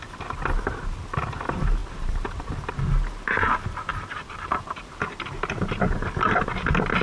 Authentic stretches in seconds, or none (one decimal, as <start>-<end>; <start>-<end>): 0.0-1.8; 2.5-3.9; 4.9-7.0